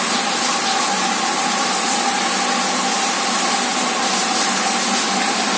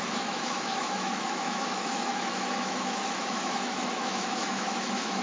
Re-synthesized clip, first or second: second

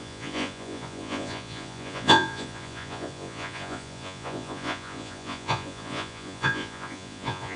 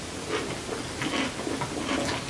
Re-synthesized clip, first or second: first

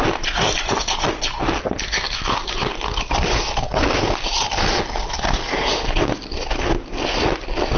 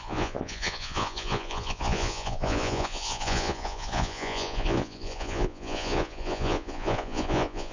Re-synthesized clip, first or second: second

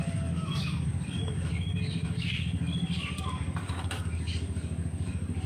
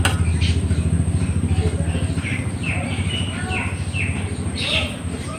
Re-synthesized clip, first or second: first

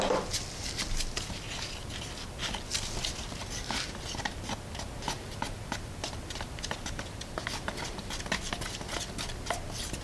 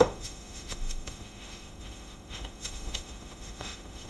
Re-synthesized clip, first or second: second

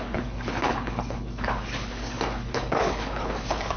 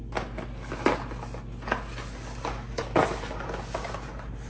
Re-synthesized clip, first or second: first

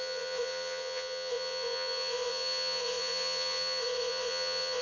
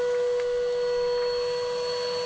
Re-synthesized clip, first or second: first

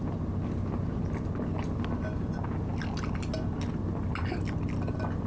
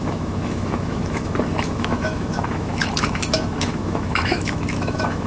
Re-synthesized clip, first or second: second